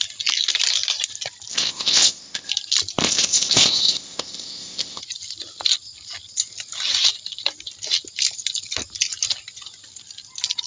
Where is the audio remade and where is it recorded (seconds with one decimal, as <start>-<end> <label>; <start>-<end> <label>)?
0.0-1.5 recorded; 1.5-2.5 remade; 2.5-3.0 recorded; 3.0-5.0 remade; 5.0-10.7 recorded